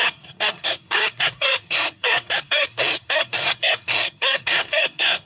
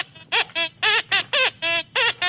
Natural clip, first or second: second